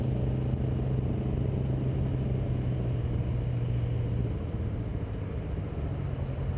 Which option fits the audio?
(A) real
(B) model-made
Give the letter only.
A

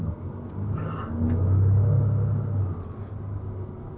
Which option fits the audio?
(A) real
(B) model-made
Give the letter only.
A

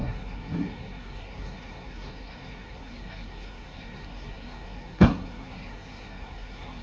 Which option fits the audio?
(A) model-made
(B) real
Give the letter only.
A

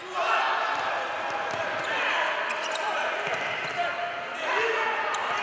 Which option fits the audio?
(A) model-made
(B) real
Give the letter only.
B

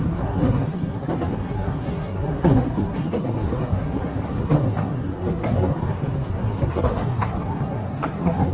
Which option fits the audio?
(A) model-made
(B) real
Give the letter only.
A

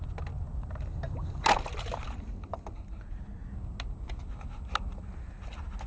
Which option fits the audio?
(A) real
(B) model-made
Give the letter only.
A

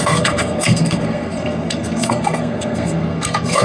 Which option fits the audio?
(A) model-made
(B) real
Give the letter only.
A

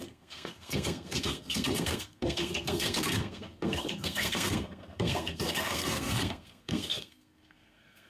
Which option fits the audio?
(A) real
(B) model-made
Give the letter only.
B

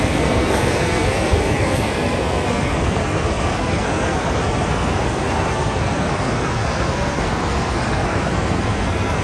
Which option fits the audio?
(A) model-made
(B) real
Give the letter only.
A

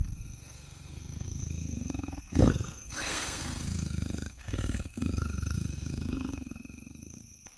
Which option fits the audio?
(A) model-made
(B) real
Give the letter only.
A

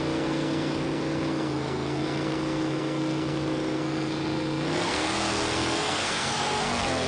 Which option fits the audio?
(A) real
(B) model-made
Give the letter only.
B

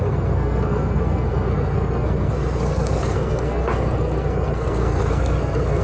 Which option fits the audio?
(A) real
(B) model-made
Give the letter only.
B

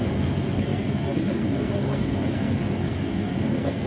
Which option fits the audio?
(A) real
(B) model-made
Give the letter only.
B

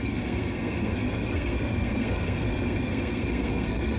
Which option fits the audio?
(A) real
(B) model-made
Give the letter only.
B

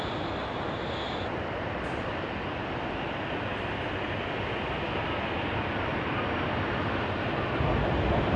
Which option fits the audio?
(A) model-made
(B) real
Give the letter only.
B